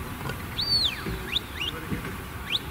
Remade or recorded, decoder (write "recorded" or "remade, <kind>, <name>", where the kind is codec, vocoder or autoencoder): recorded